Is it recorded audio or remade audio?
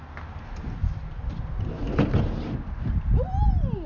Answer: recorded